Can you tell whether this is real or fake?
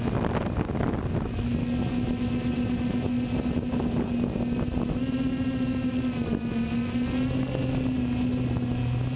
real